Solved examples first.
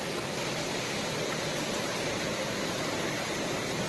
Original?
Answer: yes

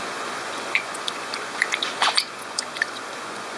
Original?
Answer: no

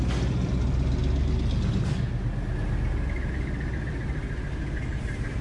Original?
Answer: yes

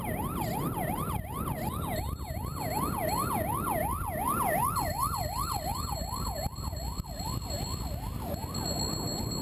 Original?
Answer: yes